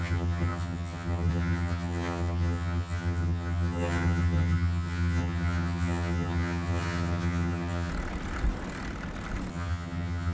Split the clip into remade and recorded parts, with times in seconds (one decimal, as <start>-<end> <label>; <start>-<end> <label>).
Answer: 0.0-7.9 remade; 7.9-9.5 recorded; 9.5-10.3 remade